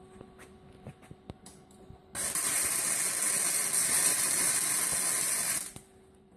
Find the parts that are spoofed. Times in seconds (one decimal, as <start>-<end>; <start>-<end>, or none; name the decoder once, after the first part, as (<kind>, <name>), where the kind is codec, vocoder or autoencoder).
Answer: none